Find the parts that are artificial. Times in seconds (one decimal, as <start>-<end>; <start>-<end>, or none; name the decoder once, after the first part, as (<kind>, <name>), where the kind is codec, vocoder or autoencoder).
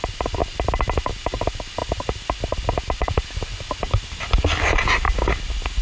none